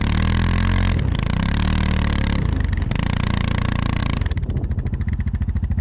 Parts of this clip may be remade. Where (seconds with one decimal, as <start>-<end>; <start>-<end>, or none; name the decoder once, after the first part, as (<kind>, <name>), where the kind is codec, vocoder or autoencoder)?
none

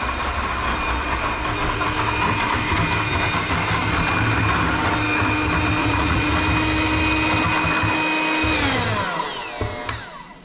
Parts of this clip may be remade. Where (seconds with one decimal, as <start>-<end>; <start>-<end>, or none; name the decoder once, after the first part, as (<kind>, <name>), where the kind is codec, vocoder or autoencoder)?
5.8-6.3 (vocoder, Vocos)

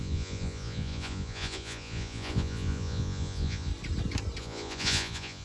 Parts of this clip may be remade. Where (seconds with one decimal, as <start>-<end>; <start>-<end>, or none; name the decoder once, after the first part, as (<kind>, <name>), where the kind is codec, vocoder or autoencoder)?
0.0-3.7 (vocoder, Vocos); 4.4-5.4

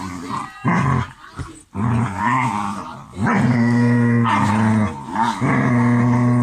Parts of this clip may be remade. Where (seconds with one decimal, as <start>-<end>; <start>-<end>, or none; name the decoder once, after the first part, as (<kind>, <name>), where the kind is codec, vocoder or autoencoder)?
3.5-4.3 (codec, SNAC)

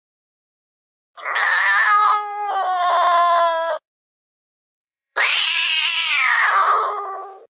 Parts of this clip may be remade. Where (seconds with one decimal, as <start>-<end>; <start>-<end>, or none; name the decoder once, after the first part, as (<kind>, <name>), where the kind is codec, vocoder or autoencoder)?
2.0-6.5 (vocoder, BigVGAN v2)

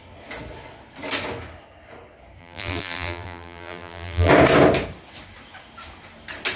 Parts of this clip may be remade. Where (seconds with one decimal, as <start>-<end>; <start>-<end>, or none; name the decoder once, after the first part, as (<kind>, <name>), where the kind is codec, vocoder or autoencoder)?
2.4-4.3 (vocoder, BigVGAN v2)

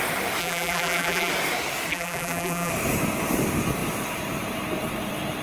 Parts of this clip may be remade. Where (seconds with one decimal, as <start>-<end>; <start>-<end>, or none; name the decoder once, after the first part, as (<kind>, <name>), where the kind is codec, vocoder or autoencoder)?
0.4-1.3 (vocoder, BigVGAN v2); 1.9-2.7

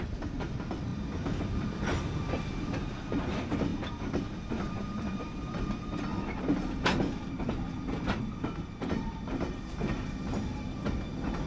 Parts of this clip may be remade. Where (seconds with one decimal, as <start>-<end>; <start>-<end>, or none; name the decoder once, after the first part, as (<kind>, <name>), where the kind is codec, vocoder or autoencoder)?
0.0-0.9 (vocoder, BigVGAN v2); 1.4-3.7; 4.5-11.5